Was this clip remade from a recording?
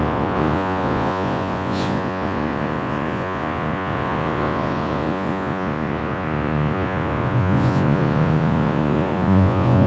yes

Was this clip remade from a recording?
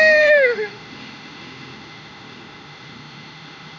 yes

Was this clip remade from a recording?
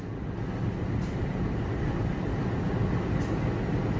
no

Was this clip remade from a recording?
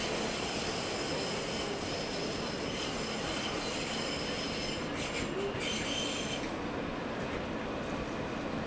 no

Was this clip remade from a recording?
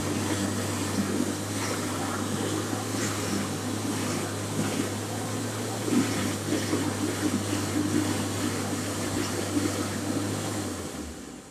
no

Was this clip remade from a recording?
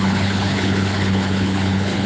yes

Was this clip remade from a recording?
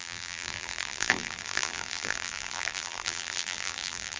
yes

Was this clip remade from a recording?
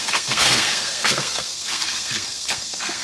yes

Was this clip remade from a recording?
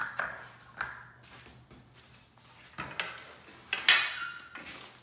no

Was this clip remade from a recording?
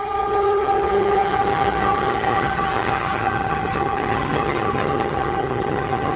yes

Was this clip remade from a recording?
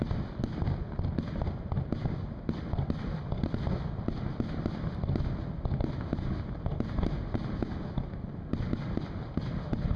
no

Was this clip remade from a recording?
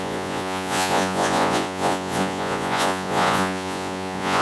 yes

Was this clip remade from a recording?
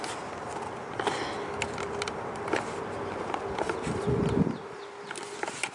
no